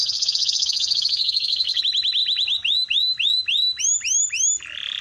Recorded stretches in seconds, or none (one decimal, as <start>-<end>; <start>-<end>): 1.8-5.0